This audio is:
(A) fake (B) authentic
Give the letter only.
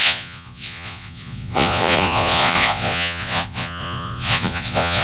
A